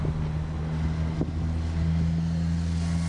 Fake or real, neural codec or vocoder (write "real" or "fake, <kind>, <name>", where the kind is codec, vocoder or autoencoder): real